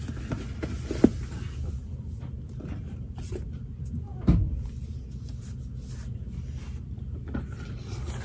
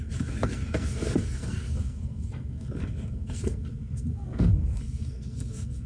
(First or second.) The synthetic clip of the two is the second